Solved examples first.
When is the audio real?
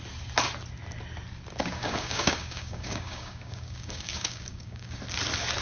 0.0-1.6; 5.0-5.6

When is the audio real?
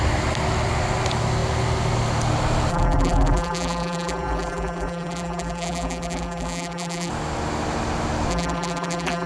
0.0-2.7; 7.1-8.3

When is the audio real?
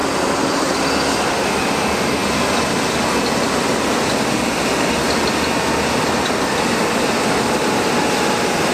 0.0-8.7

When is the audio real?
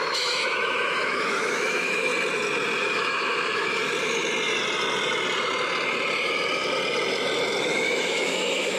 2.1-2.8; 3.8-7.6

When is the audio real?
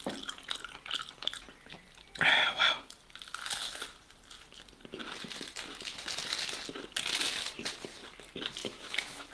0.0-8.6